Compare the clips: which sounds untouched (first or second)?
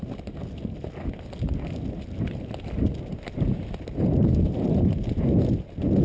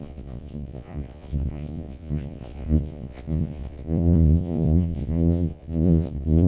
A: first